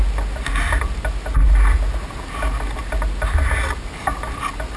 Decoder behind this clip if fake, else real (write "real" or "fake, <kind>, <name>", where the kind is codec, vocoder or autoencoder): real